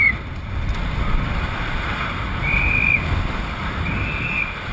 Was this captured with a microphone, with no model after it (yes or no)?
yes